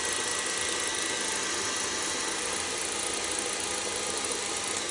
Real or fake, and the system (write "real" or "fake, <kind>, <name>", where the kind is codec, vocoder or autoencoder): real